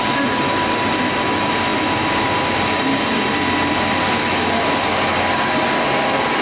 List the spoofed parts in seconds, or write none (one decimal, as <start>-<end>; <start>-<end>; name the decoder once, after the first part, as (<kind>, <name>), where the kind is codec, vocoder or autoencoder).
none